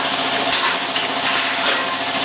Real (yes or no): yes